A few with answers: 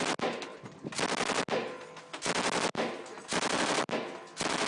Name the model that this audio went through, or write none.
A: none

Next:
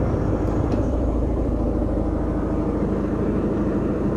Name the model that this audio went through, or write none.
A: vocoder, BigVGAN v2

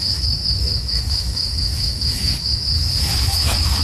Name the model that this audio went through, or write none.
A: autoencoder, DAC-VAE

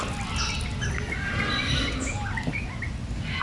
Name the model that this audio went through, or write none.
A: none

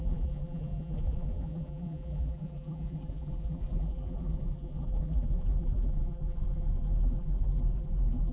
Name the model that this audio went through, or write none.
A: vocoder, BigVGAN v2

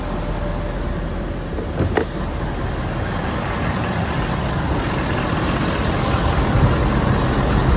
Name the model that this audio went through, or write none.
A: none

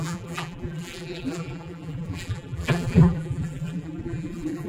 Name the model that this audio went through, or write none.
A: vocoder, BigVGAN v2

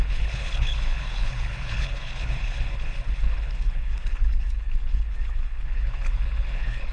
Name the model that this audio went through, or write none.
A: codec, HILCodec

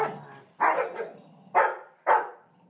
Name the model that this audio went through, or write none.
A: none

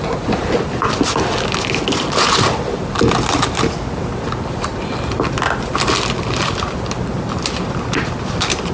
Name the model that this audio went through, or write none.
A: none